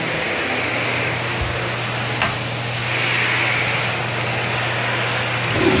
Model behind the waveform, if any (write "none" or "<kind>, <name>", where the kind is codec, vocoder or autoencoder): none